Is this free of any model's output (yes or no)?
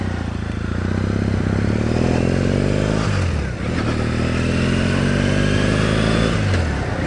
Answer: yes